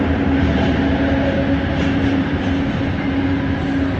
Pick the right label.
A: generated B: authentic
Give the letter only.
B